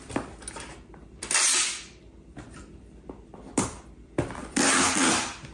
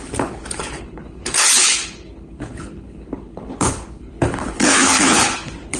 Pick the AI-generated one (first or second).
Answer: second